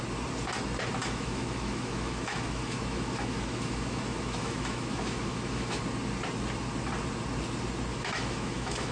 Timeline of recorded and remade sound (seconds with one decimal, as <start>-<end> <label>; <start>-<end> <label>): 0.0-1.0 recorded; 1.0-5.8 remade; 5.8-7.9 recorded; 7.9-8.9 remade